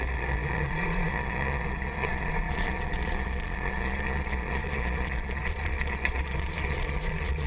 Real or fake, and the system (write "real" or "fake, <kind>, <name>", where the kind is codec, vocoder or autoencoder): fake, vocoder, Vocos